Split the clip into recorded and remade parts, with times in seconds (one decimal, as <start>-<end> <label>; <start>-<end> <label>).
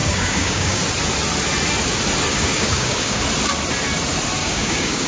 0.0-0.8 remade; 0.8-2.3 recorded; 2.3-3.2 remade; 3.2-4.4 recorded; 4.4-5.1 remade